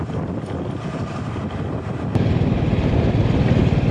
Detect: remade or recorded recorded